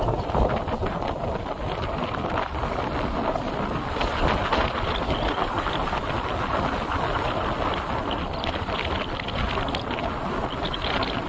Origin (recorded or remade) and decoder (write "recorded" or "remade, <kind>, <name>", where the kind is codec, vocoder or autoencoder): recorded